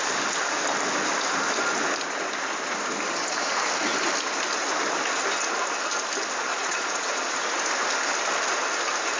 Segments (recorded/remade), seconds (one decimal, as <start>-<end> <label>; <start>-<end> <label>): 0.0-6.5 recorded; 6.5-7.3 remade; 7.3-9.2 recorded